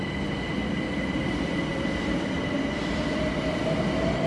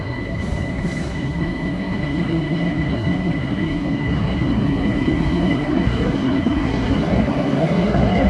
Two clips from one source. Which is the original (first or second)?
first